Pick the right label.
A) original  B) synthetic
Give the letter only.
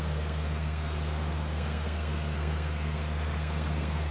B